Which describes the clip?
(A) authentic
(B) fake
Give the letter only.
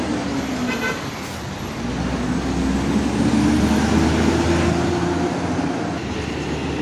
A